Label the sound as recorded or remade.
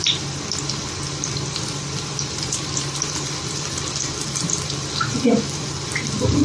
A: remade